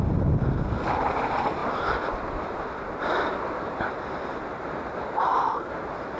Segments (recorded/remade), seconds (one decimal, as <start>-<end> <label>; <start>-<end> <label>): 0.0-6.2 recorded